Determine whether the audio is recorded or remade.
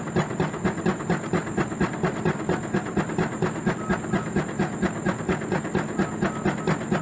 recorded